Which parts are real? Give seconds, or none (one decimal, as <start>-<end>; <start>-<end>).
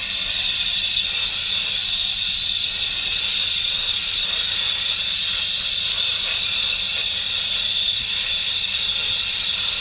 0.0-6.1; 8.9-9.8